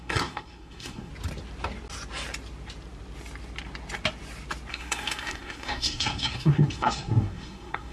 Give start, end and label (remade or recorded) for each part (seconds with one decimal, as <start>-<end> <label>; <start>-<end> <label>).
0.0-1.1 remade; 1.1-4.7 recorded; 4.7-7.9 remade